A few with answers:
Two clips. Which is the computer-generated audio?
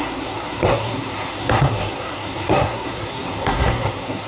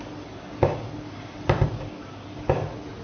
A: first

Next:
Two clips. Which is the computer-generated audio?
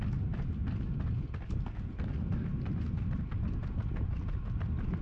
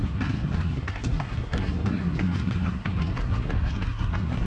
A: second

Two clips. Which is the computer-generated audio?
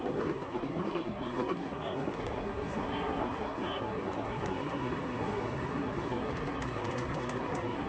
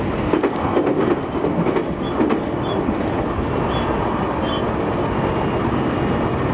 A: first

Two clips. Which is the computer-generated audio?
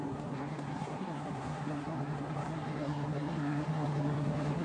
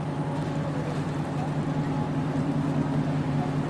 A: first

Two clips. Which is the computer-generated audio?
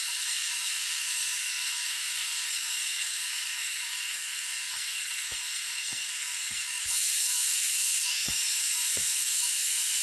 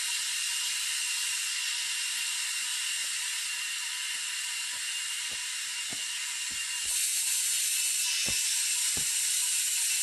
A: first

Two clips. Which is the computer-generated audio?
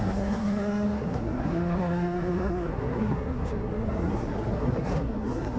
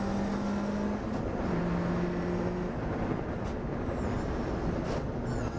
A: first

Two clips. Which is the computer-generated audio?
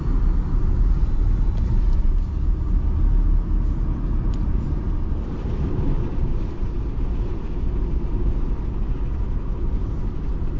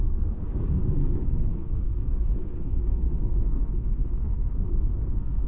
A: second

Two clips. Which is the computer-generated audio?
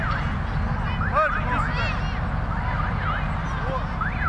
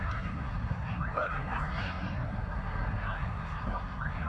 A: second